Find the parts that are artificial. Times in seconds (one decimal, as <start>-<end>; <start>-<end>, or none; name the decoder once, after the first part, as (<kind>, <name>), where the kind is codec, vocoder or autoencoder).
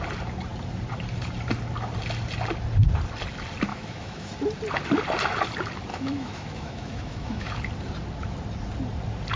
3.7-4.3 (autoencoder, DAC-VAE); 5.9-7.6